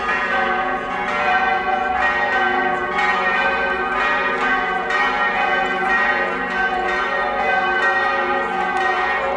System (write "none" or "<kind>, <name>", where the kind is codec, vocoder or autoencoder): none